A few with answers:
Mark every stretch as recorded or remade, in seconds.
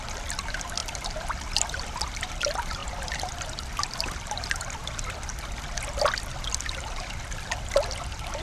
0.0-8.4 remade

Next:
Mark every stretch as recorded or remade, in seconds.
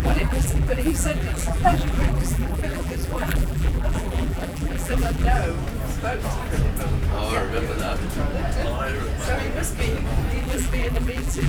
0.0-5.4 remade; 5.4-10.4 recorded; 10.4-11.5 remade